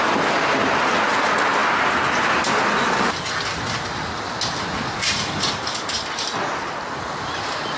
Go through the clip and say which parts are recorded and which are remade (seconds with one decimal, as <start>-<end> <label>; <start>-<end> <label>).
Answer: 0.0-7.8 recorded